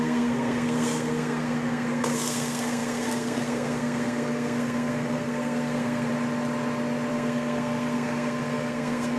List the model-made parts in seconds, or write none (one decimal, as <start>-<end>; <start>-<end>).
0.0-6.1; 7.1-9.2